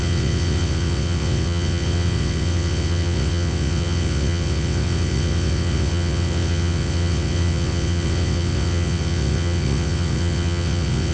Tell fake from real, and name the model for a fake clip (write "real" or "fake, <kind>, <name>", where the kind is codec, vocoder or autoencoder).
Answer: fake, vocoder, WaveNeXt